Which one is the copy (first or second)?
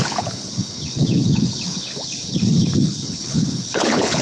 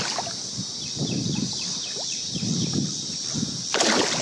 first